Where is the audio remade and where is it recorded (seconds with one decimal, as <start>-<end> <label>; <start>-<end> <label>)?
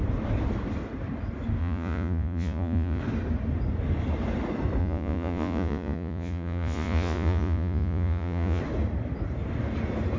0.0-1.6 recorded; 1.6-3.0 remade; 3.0-4.8 recorded; 4.8-8.6 remade; 8.6-10.2 recorded